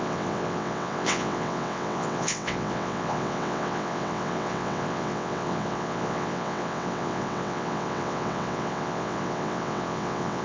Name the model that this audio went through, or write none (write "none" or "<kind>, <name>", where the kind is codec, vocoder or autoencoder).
vocoder, WaveNeXt